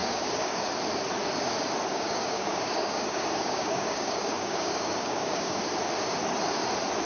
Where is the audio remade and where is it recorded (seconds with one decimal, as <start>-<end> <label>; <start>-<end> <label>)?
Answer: 0.0-0.7 remade; 0.7-1.9 recorded; 1.9-5.6 remade; 5.6-7.1 recorded